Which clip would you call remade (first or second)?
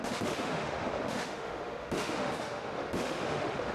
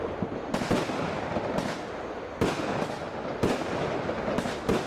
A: first